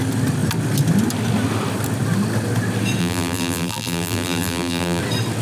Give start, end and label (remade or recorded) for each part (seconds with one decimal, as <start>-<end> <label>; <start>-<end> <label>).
0.0-3.0 recorded; 3.0-5.0 remade; 5.0-5.4 recorded